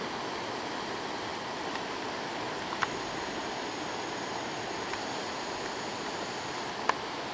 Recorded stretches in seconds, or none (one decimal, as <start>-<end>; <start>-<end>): 0.0-7.3